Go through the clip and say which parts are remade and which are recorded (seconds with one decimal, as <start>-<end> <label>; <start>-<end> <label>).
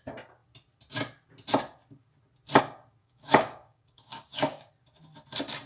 0.0-3.0 recorded; 3.0-4.7 remade; 4.7-5.7 recorded